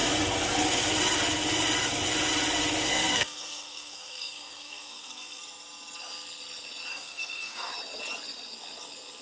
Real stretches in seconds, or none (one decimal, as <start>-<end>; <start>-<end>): 0.0-2.9; 5.4-6.9; 7.7-9.2